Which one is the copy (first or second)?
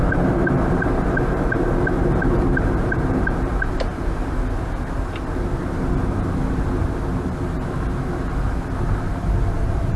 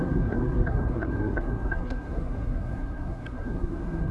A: second